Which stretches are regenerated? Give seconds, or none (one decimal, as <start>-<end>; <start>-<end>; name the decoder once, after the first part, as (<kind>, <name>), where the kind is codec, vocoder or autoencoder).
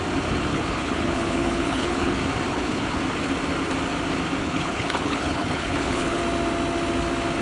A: 0.5-2.1 (codec, HILCodec); 2.5-3.0; 4.4-6.2